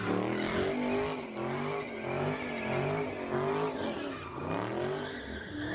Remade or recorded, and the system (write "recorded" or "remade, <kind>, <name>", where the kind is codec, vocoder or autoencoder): recorded